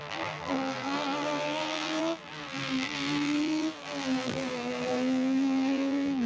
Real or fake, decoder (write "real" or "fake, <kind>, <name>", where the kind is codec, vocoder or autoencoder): fake, vocoder, BigVGAN v2